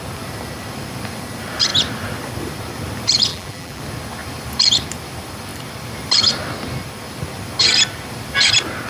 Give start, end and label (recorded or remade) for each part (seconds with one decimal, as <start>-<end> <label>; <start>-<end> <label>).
0.0-3.3 recorded; 3.3-3.8 remade; 3.8-8.9 recorded